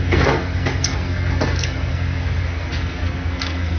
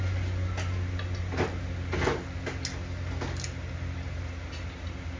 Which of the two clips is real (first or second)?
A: second